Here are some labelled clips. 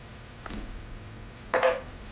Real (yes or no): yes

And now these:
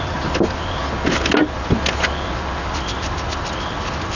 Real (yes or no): yes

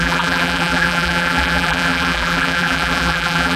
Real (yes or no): no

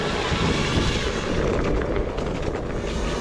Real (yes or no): yes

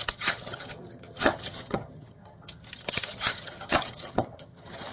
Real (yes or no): no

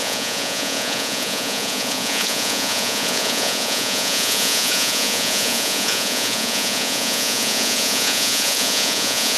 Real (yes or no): no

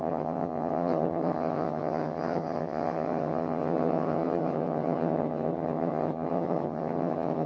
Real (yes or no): no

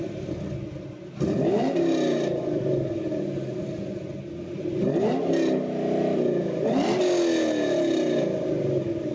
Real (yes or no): yes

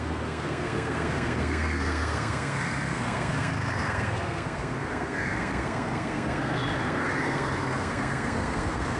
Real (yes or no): no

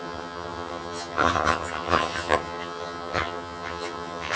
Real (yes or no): no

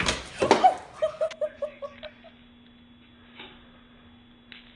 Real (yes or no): yes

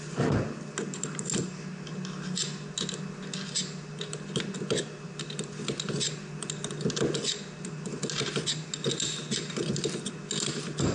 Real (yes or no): yes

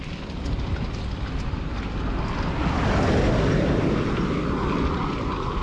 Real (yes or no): yes